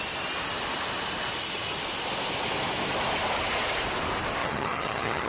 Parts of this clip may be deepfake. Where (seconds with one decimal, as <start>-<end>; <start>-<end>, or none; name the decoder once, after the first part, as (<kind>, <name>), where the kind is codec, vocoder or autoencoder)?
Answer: 4.4-5.3 (vocoder, HiFi-GAN)